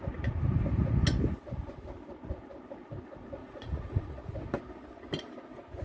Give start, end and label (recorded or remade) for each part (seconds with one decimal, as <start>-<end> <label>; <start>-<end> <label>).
0.0-3.4 recorded; 3.4-4.3 remade; 4.3-5.8 recorded